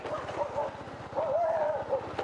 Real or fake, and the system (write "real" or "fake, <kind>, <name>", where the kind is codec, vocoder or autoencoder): real